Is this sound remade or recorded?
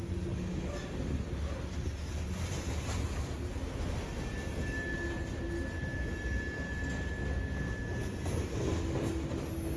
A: recorded